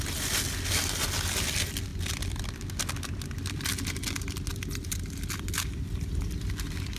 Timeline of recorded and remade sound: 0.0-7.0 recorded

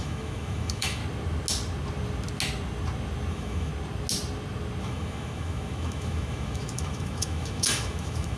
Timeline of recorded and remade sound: 0.0-1.0 remade; 1.0-3.3 recorded; 3.3-3.7 remade; 3.7-4.8 recorded; 4.8-8.4 remade

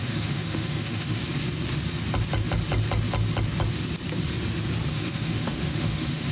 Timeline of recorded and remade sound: 0.0-1.2 remade; 1.2-4.9 recorded; 4.9-6.3 remade

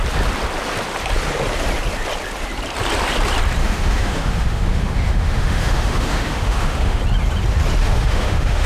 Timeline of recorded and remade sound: 0.0-3.6 recorded; 3.6-7.0 remade; 7.0-7.8 recorded; 7.8-8.7 remade

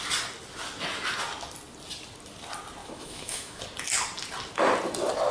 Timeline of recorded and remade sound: 0.0-2.8 recorded; 2.8-3.6 remade; 3.6-5.3 recorded

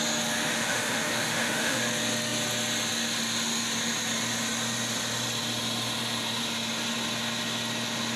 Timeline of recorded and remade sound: 0.0-0.5 recorded; 0.5-1.8 remade; 1.8-8.2 recorded